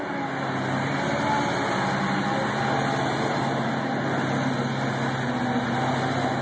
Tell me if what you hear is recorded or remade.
recorded